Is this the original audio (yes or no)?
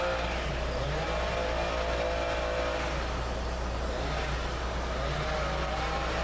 yes